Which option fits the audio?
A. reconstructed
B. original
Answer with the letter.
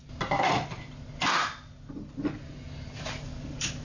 B